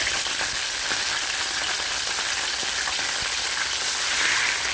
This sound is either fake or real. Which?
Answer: real